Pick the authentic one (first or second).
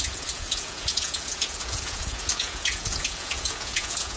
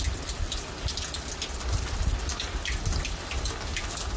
second